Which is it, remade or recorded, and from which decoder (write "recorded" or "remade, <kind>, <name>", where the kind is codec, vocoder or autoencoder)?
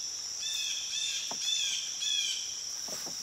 recorded